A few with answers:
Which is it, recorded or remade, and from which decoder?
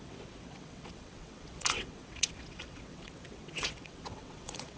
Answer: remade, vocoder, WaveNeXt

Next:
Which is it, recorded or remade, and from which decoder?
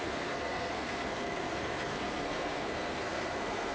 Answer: remade, codec, SNAC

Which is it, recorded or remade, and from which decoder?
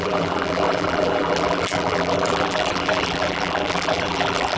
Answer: remade, vocoder, BigVGAN v2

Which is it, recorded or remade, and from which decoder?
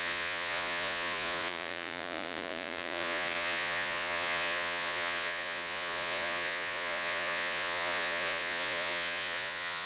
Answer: remade, vocoder, Vocos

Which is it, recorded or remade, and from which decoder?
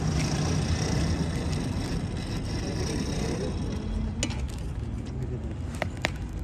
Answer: recorded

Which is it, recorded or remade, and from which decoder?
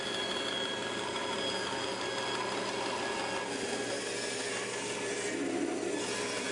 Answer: recorded